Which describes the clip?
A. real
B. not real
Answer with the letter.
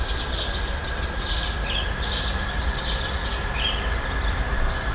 B